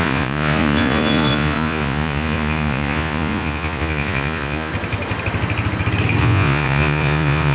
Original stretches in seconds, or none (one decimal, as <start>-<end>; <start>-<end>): 4.7-6.2